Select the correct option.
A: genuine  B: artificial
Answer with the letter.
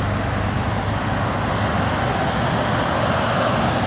A